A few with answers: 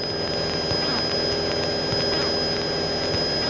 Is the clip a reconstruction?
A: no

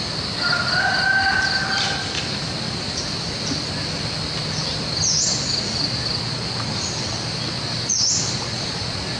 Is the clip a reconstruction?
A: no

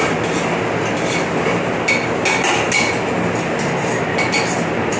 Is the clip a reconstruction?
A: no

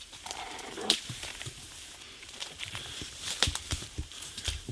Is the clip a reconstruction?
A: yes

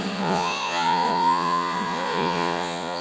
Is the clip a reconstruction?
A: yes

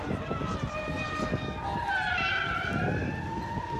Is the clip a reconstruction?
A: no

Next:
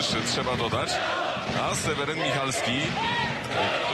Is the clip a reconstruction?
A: no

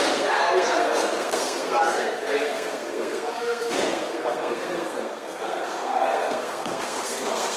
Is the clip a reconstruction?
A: yes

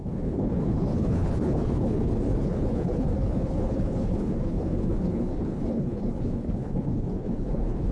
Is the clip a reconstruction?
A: yes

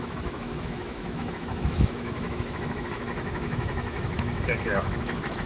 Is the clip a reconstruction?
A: yes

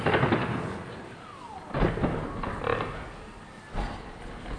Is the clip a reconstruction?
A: no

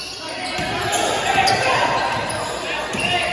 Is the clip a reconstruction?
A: no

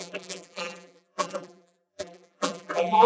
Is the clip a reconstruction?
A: yes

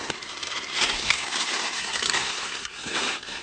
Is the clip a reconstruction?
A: yes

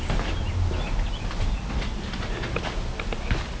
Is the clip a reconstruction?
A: no